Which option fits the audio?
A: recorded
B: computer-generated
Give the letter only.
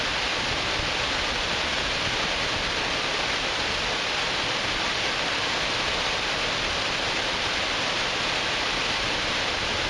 A